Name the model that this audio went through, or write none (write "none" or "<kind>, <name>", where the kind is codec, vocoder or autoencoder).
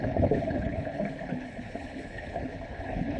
codec, HILCodec